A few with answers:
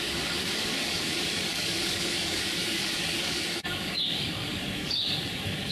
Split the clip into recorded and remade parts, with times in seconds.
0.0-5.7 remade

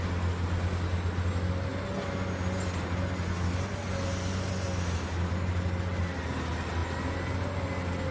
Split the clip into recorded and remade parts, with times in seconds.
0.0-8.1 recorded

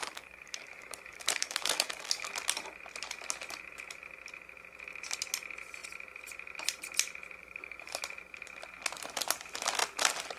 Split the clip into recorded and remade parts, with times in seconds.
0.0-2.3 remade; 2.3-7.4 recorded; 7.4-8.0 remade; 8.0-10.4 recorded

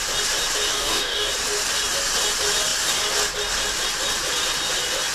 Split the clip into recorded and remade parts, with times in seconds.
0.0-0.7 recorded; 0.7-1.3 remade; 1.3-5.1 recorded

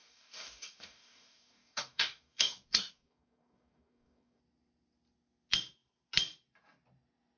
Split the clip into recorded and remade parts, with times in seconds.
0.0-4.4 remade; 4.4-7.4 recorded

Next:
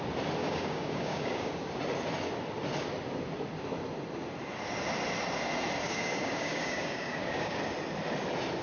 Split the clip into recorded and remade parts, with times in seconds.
0.0-0.4 recorded; 0.4-1.5 remade; 1.5-5.8 recorded; 5.8-7.6 remade; 7.6-8.6 recorded

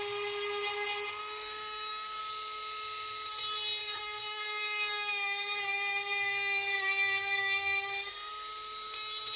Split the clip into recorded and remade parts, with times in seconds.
0.0-1.2 recorded; 1.2-2.2 remade; 2.2-3.8 recorded; 3.8-8.3 remade; 8.3-9.4 recorded

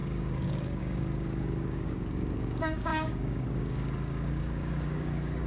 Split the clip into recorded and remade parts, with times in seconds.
0.0-5.5 remade